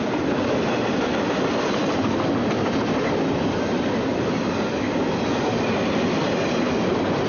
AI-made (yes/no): no